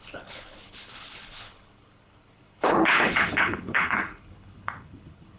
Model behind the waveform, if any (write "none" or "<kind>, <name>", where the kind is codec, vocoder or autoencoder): codec, HILCodec